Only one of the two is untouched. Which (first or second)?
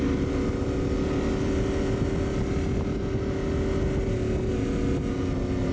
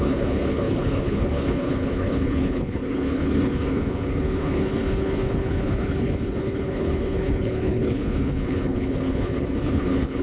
first